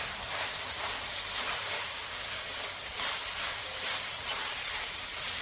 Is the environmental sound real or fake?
fake